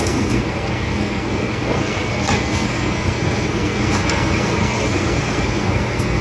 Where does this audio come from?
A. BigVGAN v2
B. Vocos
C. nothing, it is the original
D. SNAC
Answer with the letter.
D